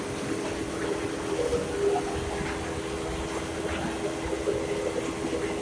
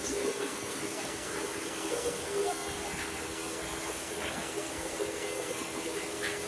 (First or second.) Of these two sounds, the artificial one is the second